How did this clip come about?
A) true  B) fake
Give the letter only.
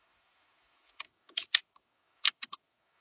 B